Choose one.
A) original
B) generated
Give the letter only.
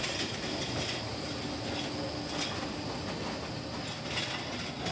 A